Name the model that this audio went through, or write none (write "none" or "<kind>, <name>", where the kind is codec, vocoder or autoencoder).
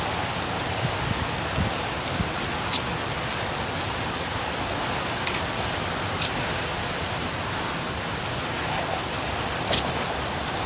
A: none